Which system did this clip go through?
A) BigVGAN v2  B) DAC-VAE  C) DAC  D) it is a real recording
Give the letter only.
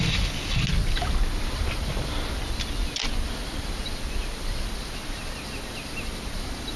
D